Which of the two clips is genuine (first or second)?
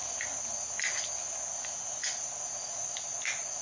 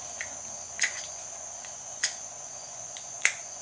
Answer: first